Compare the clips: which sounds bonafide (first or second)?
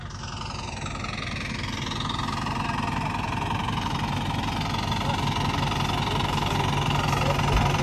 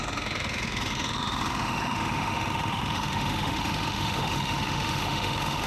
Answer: first